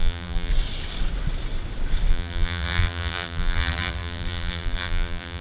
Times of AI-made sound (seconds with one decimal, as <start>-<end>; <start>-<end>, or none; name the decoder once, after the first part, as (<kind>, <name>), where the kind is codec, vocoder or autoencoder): 0.0-0.5 (vocoder, BigVGAN v2); 2.1-5.4